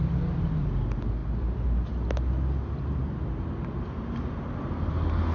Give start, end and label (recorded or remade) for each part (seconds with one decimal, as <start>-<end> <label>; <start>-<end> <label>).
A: 0.0-5.3 recorded